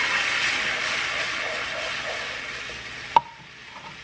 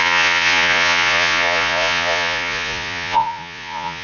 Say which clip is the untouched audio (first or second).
first